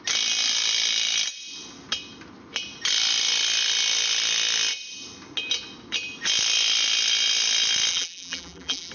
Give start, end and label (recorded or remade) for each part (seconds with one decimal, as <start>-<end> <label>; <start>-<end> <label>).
0.0-7.9 recorded; 7.9-8.9 remade